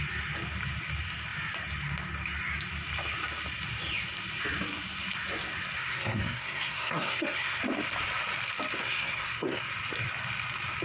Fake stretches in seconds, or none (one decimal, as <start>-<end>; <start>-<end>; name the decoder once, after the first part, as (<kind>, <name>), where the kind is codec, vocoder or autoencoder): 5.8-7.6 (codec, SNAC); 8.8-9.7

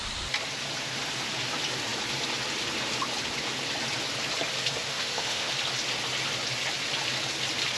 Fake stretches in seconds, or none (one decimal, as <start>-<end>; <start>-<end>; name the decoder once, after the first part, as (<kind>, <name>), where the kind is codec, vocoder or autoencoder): 4.8-5.5 (autoencoder, DAC-VAE)

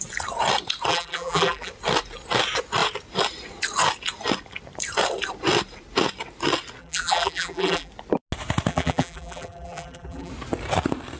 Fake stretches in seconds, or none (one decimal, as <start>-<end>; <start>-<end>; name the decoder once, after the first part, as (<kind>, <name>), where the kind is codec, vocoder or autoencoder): 0.9-1.7 (vocoder, BigVGAN v2); 6.8-7.9; 8.7-10.3

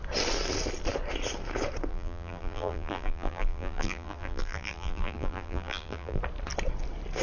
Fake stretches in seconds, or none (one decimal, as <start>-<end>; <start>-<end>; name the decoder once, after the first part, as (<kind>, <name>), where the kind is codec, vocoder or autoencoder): 1.9-6.2 (vocoder, BigVGAN v2)

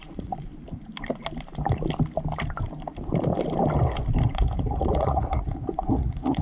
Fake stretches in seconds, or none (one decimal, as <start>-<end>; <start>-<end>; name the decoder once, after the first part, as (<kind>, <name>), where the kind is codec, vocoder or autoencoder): 0.0-0.5 (vocoder, Vocos); 4.3-6.4

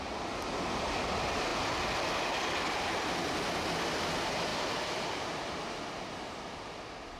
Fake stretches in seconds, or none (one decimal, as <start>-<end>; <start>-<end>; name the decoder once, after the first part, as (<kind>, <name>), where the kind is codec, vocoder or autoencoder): 4.5-6.7 (vocoder, BigVGAN v2)